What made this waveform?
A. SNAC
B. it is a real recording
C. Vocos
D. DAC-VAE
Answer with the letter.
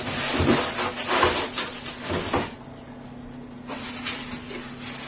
B